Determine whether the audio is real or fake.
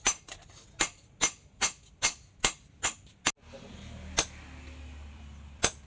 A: real